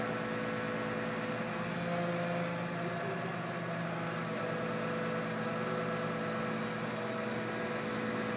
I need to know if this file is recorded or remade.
recorded